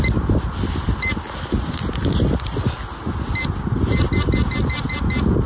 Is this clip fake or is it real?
real